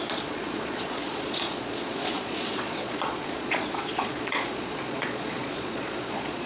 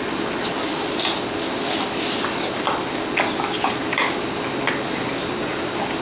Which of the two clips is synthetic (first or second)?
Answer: first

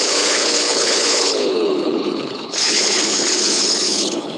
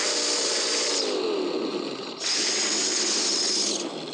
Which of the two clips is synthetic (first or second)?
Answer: first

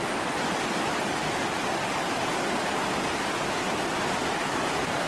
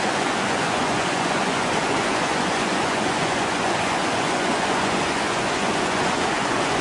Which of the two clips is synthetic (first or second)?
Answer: second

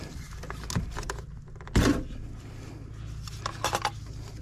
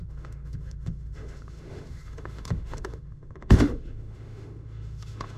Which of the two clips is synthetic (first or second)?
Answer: second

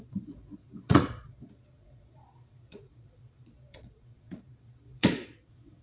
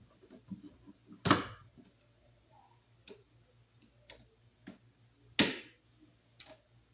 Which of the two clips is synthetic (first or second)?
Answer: first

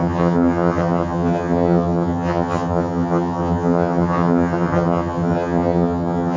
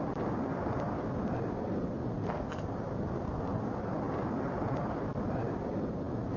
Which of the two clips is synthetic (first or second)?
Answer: first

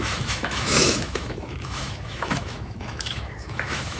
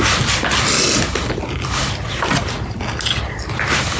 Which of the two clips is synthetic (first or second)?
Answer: first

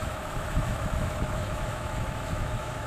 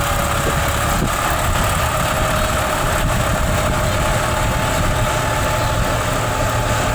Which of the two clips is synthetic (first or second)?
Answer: first